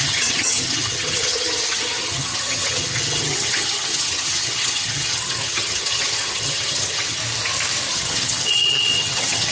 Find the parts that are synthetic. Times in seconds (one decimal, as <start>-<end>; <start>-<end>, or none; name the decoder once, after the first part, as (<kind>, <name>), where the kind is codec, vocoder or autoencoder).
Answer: 0.0-7.2 (vocoder, HiFi-GAN); 7.9-9.5